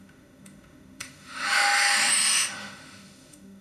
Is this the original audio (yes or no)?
no